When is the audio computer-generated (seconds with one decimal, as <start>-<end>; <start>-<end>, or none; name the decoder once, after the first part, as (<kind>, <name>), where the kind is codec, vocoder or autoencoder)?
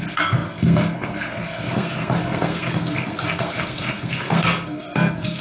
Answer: 0.0-5.4 (codec, SNAC)